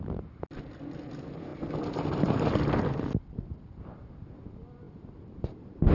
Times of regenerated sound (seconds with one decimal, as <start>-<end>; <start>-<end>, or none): none